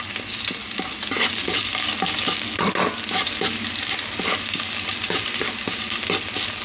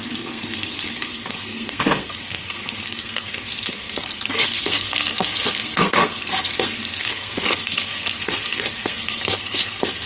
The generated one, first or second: second